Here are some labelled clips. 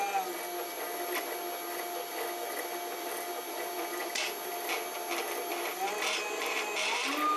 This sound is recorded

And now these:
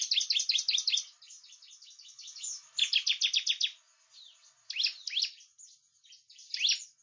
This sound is recorded